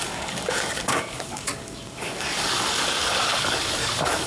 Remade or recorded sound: remade